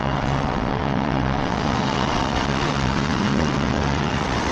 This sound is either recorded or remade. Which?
remade